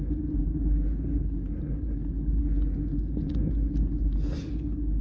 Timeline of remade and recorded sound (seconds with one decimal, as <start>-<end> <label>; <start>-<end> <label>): 0.0-5.0 recorded